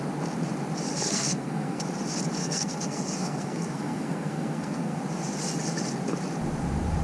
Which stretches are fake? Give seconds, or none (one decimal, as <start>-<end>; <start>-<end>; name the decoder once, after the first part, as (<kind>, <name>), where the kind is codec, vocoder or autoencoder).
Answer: 0.9-1.8 (codec, SNAC); 2.4-5.0